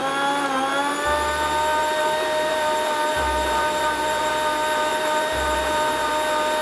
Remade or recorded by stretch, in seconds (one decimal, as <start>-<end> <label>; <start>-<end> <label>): 0.0-1.8 recorded; 1.8-4.3 remade; 4.3-4.9 recorded; 4.9-6.1 remade; 6.1-6.6 recorded